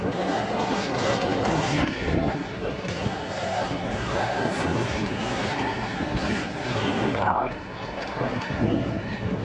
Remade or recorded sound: remade